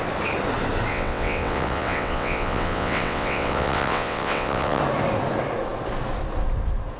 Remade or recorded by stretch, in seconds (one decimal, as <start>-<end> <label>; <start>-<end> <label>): 0.0-0.9 recorded; 0.9-4.8 remade; 4.8-7.0 recorded